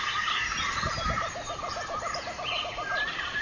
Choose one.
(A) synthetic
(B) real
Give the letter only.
B